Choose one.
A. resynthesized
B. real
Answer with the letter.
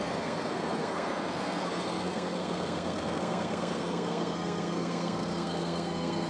A